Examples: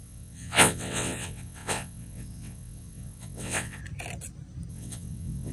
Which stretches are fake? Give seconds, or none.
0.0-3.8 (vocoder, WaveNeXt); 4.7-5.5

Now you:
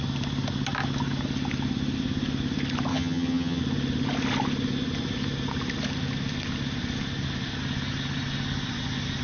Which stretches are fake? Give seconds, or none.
2.9-3.6 (vocoder, HiFi-GAN)

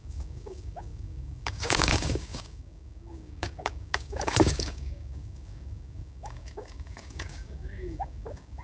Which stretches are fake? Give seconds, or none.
0.0-8.6 (codec, DAC)

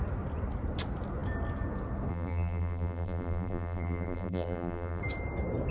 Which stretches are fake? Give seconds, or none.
2.1-5.0 (vocoder, BigVGAN v2)

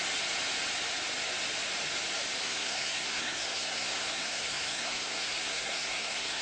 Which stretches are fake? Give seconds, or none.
2.4-6.4 (codec, SNAC)

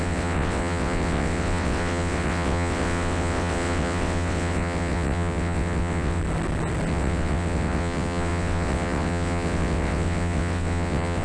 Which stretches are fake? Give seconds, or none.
0.0-6.2 (vocoder, WaveNeXt); 6.9-11.2

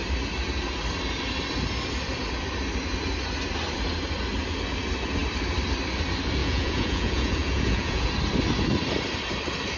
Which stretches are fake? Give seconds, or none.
6.4-8.1 (vocoder, Vocos)

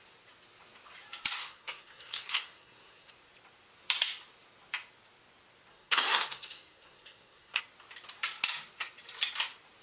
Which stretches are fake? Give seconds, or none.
1.4-3.1 (codec, SNAC); 5.7-7.6